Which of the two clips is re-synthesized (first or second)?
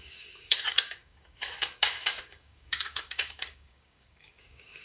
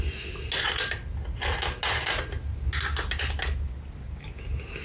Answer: first